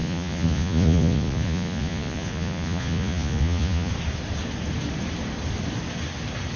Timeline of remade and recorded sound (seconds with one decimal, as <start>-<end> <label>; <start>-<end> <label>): 0.0-3.9 remade; 3.9-6.6 recorded

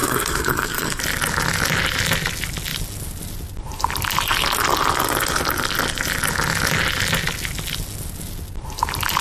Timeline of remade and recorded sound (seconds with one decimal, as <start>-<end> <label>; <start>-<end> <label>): 0.0-1.0 remade; 1.0-9.2 recorded

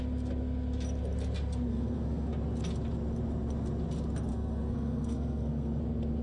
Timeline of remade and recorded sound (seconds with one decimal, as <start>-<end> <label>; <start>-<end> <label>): 0.0-1.7 recorded; 1.7-2.3 remade; 2.3-4.3 recorded; 4.3-5.8 remade; 5.8-6.2 recorded

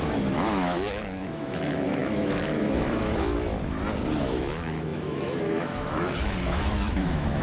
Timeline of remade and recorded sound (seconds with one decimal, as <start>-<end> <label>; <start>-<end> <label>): 0.0-3.5 remade; 3.5-4.2 recorded; 4.2-7.4 remade